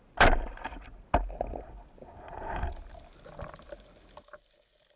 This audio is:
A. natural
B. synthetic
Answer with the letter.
A